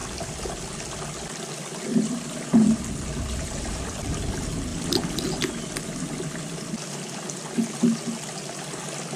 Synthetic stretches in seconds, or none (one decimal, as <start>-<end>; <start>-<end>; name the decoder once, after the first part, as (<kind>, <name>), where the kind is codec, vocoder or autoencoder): 0.0-0.8 (vocoder, BigVGAN v2); 1.9-3.7; 4.7-5.8